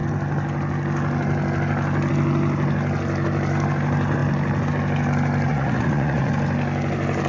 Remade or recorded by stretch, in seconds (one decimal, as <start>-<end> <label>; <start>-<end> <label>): 0.0-5.5 recorded; 5.5-6.3 remade; 6.3-7.3 recorded